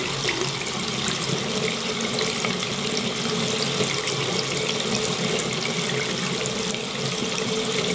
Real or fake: real